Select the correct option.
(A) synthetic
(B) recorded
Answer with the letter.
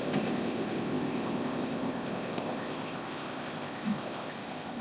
A